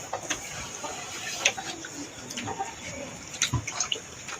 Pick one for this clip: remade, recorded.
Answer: recorded